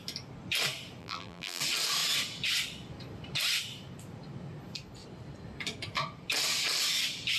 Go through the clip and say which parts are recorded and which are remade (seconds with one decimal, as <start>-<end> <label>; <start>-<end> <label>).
0.0-1.0 recorded; 1.0-1.6 remade; 1.6-7.4 recorded